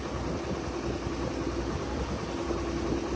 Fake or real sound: real